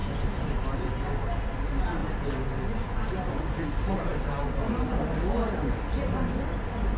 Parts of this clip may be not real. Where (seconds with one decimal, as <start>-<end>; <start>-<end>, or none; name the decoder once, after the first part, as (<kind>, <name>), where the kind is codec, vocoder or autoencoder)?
none